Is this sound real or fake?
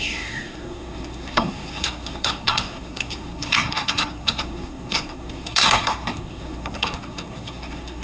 fake